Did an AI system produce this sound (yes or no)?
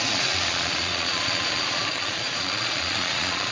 yes